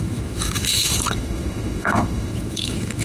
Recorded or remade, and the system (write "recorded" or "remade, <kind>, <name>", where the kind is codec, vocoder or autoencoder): remade, autoencoder, DAC-VAE